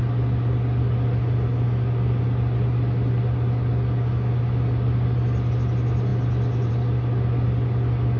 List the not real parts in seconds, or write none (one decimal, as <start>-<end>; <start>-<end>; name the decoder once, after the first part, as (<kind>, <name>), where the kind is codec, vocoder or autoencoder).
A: none